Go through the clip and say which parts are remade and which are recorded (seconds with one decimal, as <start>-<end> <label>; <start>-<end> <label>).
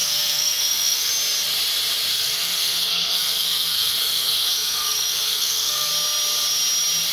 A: 0.0-1.1 remade; 1.1-2.1 recorded; 2.1-5.9 remade; 5.9-7.1 recorded